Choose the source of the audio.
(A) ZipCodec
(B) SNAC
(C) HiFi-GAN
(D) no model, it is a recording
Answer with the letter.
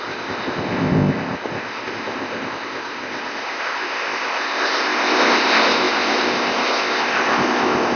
A